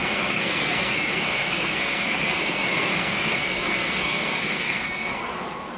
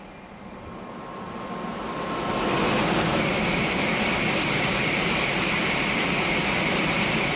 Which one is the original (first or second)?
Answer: second